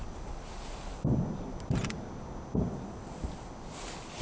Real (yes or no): yes